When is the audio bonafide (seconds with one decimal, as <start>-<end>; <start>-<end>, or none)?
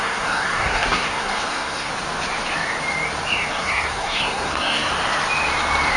1.9-3.5; 4.9-6.0